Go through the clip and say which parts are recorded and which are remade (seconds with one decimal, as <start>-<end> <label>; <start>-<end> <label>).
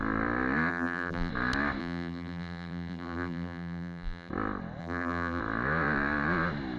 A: 0.0-0.7 recorded; 0.7-1.3 remade; 1.3-1.8 recorded; 1.8-4.3 remade; 4.3-4.8 recorded; 4.8-5.4 remade; 5.4-6.8 recorded